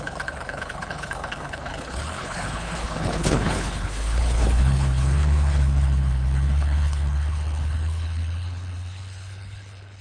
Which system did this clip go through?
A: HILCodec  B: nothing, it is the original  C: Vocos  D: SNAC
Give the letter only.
A